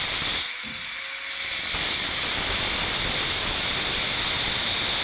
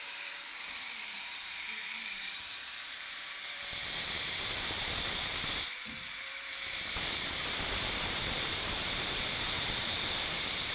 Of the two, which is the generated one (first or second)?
second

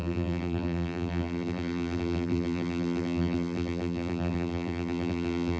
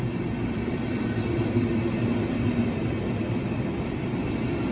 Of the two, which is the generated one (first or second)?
first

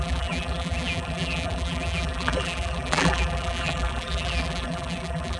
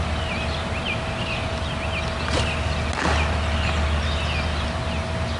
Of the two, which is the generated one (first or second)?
first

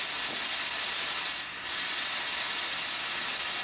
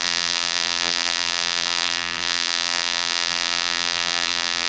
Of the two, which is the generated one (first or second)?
second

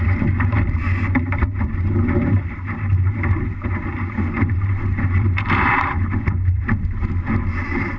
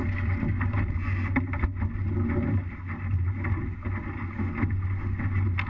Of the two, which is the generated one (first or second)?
first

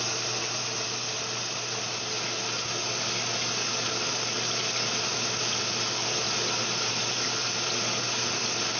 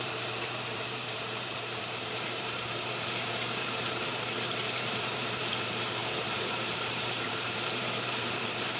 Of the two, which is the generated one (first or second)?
second